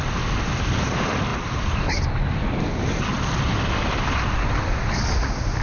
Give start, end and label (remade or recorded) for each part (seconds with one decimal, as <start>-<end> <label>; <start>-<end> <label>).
0.0-5.6 recorded

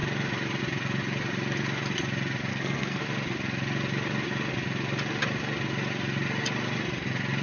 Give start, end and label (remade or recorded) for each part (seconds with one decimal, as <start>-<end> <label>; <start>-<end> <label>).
0.0-2.5 recorded; 2.5-3.0 remade; 3.0-7.4 recorded

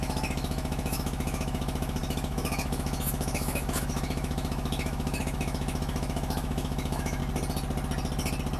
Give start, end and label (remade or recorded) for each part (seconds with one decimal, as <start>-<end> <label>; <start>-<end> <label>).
0.0-7.2 remade; 7.2-8.6 recorded

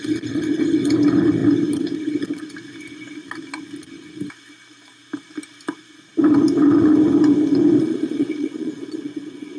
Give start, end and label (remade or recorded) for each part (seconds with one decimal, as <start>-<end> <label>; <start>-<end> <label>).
0.0-7.8 recorded; 7.8-9.6 remade

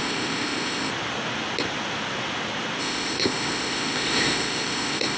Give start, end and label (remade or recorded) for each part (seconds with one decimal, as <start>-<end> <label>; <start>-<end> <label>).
0.0-0.9 remade; 0.9-2.8 recorded; 2.8-5.2 remade

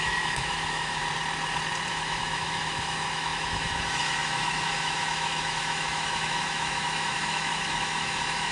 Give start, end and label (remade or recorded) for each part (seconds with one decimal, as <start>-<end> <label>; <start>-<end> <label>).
0.0-1.0 remade; 1.0-1.9 recorded; 1.9-8.5 remade

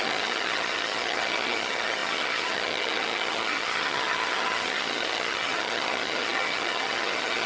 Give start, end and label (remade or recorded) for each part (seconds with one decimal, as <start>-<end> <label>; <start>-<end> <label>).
0.0-7.5 remade